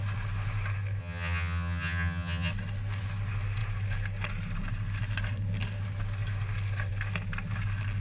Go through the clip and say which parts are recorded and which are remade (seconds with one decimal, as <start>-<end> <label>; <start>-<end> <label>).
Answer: 0.0-1.0 recorded; 1.0-2.5 remade; 2.5-8.0 recorded